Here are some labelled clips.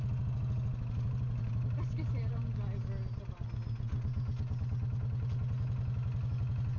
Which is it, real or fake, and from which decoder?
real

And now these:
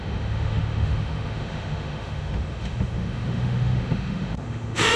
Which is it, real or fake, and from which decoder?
fake, autoencoder, DAC-VAE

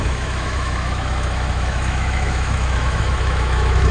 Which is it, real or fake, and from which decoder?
fake, autoencoder, DAC-VAE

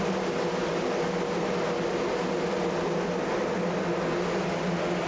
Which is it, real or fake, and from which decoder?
real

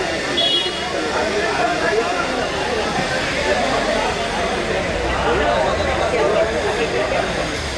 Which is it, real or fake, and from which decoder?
real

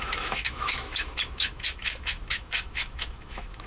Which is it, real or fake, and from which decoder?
fake, autoencoder, DAC-VAE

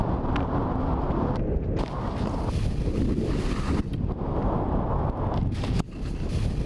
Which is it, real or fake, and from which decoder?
real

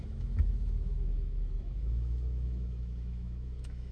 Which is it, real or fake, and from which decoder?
fake, autoencoder, DAC-VAE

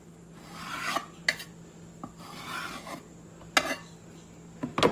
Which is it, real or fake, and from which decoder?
real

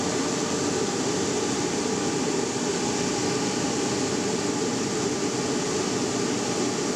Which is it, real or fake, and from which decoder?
real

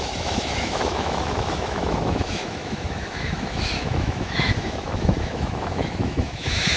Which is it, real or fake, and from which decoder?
fake, autoencoder, DAC-VAE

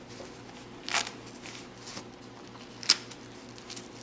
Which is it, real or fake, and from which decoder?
real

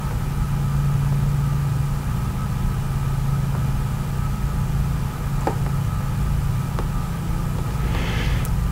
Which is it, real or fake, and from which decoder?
real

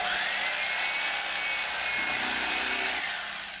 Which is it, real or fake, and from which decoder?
real